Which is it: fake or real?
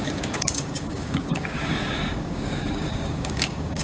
fake